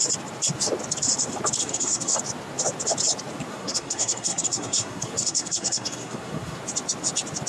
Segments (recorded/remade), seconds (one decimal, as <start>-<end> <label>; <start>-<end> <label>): 0.0-1.6 recorded; 1.6-2.2 remade; 2.2-3.5 recorded; 3.5-6.6 remade; 6.6-7.5 recorded